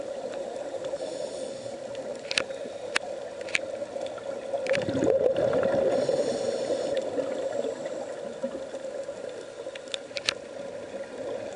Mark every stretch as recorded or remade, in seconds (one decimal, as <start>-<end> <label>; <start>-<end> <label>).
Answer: 0.0-11.6 recorded